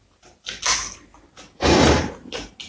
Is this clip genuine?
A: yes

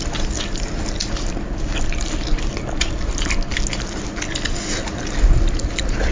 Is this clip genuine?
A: yes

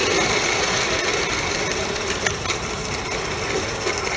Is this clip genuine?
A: yes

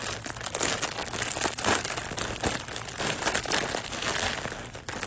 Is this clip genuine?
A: yes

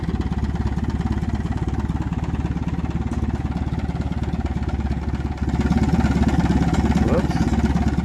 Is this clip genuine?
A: yes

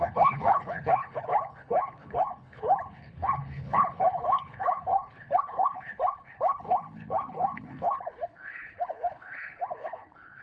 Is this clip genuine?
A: no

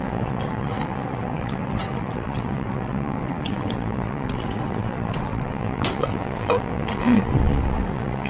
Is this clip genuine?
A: no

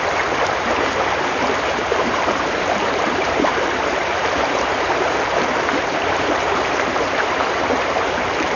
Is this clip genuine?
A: no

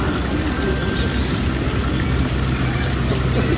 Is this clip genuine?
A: yes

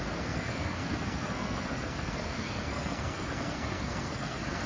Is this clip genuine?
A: no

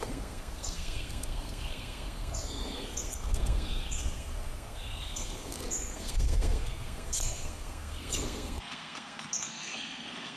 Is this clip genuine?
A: no